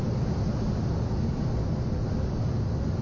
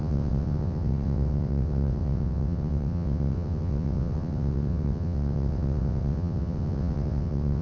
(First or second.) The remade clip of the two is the second